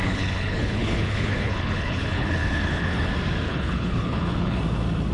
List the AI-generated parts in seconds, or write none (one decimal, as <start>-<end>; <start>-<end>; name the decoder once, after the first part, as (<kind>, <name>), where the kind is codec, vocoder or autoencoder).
0.0-3.1 (codec, HILCodec); 3.5-4.6